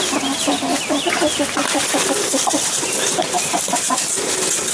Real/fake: real